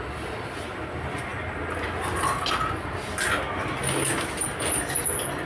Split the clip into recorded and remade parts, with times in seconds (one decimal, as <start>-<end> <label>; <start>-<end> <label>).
0.0-5.5 recorded